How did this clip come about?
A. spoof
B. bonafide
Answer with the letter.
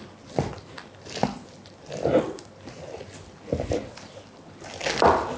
B